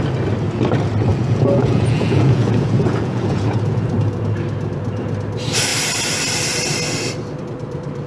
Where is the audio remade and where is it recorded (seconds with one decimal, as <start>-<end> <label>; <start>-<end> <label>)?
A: 0.0-1.1 recorded; 1.1-3.9 remade; 3.9-8.1 recorded